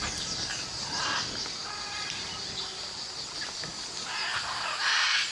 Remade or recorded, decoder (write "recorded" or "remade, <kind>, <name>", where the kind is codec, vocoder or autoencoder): recorded